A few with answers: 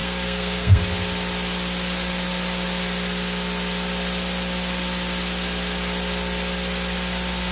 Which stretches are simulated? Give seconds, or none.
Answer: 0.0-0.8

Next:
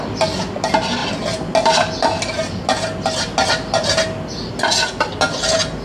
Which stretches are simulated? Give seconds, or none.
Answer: none

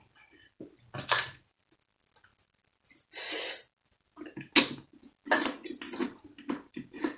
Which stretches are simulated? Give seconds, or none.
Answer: none